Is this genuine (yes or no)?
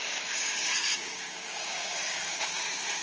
no